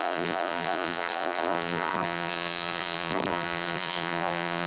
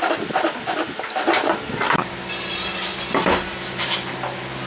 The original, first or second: second